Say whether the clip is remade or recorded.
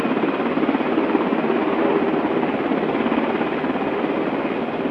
recorded